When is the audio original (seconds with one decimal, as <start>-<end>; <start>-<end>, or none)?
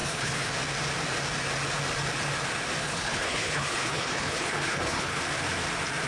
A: 0.5-2.8; 5.2-6.1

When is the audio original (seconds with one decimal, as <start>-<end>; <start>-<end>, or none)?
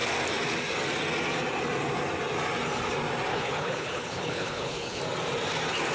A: 0.0-3.3; 5.0-5.9